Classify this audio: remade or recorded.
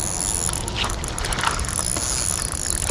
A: recorded